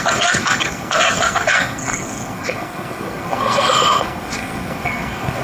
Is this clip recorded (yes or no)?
no